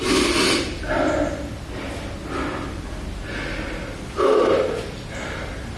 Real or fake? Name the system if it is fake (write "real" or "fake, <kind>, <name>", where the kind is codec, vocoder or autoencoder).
real